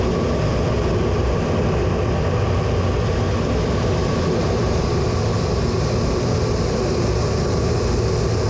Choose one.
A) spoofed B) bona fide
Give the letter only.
B